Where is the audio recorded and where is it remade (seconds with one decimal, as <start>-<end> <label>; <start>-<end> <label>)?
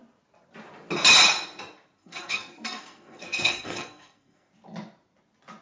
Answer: 0.0-2.0 recorded; 2.0-4.5 remade; 4.5-5.6 recorded